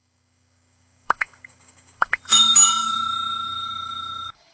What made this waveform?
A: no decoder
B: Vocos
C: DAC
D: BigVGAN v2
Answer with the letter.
C